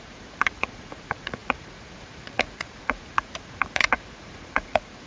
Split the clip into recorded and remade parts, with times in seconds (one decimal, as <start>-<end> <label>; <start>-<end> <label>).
0.0-5.1 remade